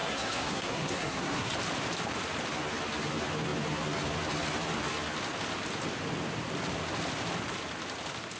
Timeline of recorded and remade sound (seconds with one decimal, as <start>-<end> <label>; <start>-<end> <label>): 0.0-1.5 remade; 1.5-8.4 recorded